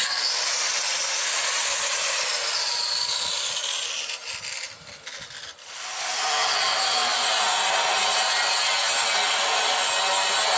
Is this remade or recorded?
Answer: recorded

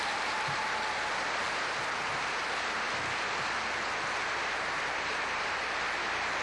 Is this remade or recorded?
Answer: recorded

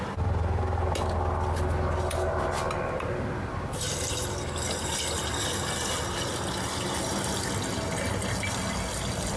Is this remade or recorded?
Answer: recorded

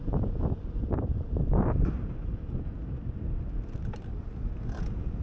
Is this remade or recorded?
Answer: recorded